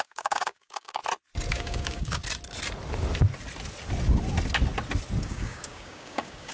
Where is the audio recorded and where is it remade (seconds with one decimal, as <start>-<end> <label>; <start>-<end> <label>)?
0.0-1.0 remade; 1.0-1.5 recorded; 1.5-2.2 remade; 2.2-5.2 recorded; 5.2-6.5 remade